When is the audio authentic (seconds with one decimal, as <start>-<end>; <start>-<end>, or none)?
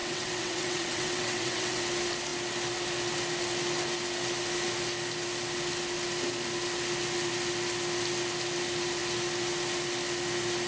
1.8-10.7